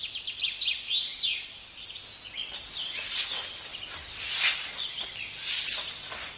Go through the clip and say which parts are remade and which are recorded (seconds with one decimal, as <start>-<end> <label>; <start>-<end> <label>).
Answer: 0.0-6.4 recorded